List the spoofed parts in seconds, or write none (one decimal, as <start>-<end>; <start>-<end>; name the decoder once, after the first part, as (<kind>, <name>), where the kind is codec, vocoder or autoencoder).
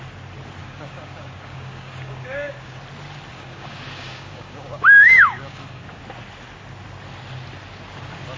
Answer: 0.6-2.8 (codec, DAC); 3.3-6.0